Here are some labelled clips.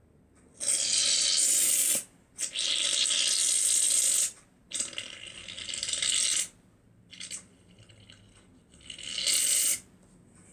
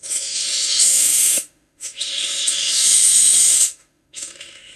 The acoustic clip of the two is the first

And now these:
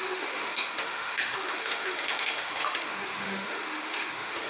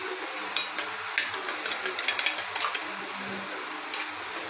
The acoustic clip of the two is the second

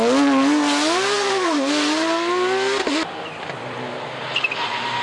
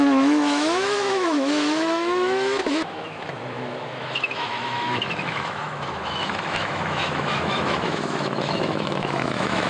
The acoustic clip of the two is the first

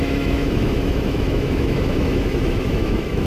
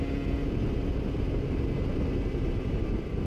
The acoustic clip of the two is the second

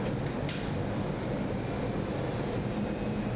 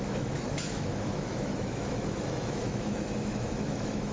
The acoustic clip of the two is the first